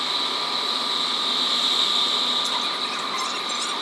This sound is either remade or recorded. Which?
recorded